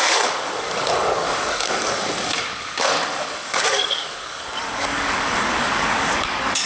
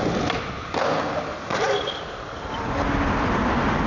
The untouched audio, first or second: second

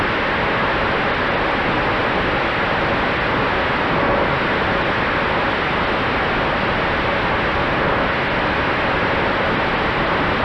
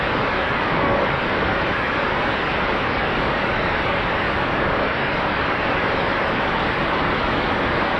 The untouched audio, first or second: first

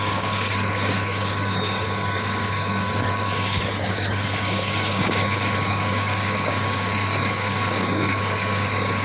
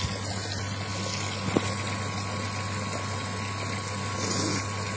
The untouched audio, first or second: second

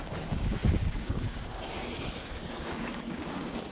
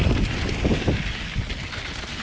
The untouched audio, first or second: second